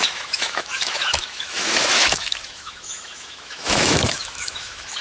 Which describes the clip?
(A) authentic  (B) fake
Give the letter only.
B